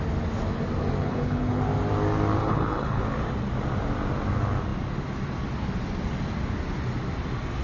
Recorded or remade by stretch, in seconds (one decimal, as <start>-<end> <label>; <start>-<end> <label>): 0.0-1.0 recorded; 1.0-1.6 remade; 1.6-2.4 recorded; 2.4-3.0 remade; 3.0-7.6 recorded